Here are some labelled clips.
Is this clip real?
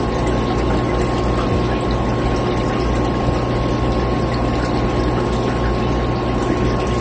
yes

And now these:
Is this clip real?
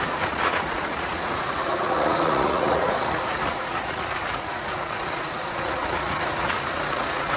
no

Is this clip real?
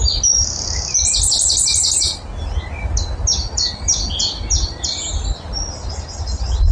yes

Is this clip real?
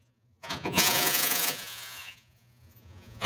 no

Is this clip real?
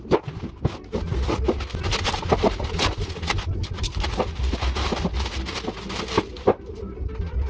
yes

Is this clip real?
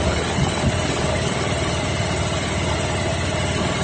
yes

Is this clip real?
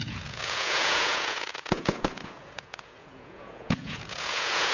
no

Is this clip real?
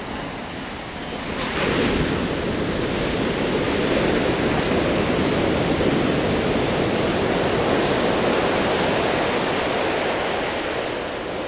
yes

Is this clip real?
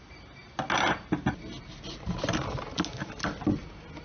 yes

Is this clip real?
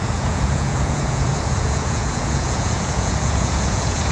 no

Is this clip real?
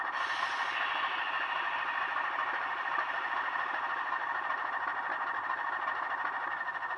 yes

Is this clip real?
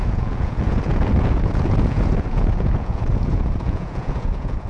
no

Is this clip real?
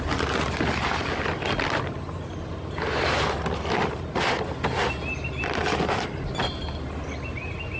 yes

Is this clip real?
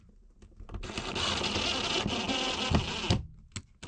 yes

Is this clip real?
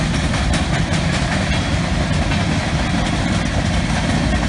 yes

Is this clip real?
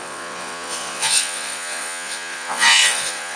no